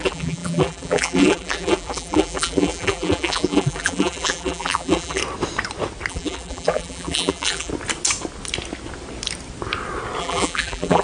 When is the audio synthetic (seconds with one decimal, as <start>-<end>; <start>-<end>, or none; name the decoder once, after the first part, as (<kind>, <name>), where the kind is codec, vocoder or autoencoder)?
0.0-5.2 (vocoder, BigVGAN v2); 6.1-7.7; 10.2-11.0